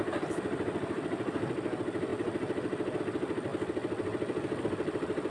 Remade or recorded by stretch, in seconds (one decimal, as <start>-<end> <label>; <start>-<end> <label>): 0.0-2.1 remade; 2.1-3.0 recorded; 3.0-3.5 remade; 3.5-4.6 recorded; 4.6-5.3 remade